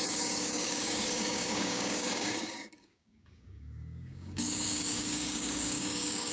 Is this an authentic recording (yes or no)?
no